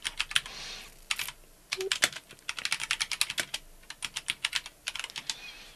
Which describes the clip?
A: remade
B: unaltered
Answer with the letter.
B